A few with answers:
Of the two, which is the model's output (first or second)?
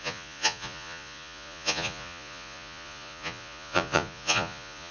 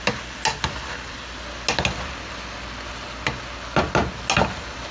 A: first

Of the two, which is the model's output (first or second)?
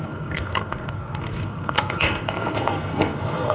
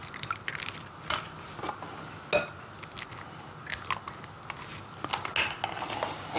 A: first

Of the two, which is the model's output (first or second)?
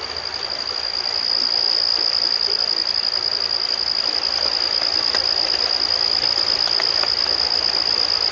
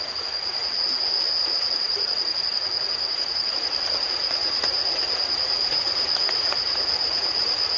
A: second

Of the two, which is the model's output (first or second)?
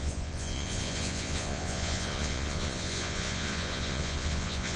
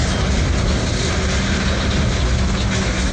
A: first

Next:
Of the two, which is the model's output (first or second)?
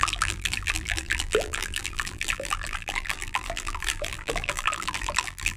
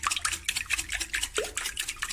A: first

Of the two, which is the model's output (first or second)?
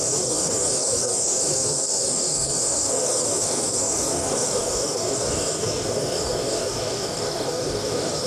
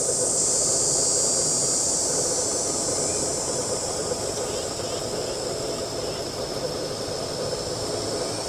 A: first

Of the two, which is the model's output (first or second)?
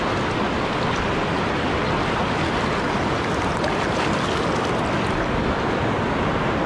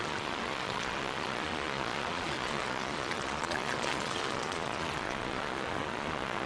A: second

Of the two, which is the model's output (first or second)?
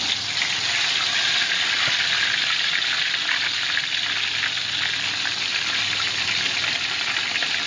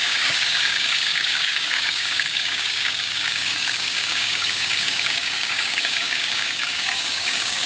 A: second